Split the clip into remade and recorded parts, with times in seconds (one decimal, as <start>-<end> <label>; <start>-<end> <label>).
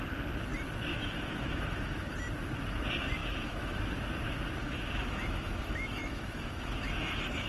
0.0-0.9 recorded; 0.9-2.1 remade; 2.1-3.2 recorded; 3.2-3.8 remade; 3.8-4.6 recorded; 4.6-7.5 remade